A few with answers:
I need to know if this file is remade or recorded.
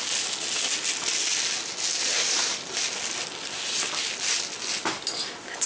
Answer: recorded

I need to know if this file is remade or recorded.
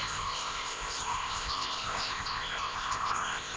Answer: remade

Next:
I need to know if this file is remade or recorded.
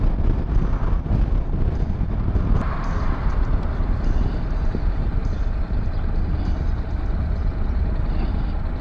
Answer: recorded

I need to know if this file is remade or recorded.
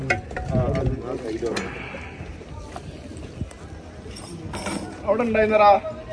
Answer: recorded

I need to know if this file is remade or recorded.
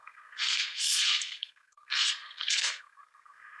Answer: remade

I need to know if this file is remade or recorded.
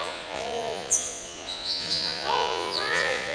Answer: remade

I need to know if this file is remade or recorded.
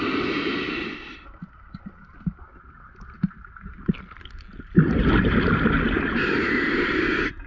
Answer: recorded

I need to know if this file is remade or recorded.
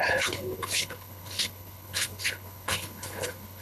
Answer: remade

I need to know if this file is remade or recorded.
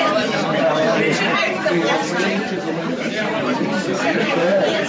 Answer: remade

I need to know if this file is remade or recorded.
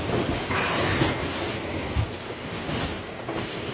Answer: recorded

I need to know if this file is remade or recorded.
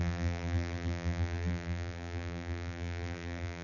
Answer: remade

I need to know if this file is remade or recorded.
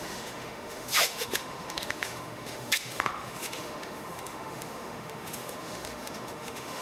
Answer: remade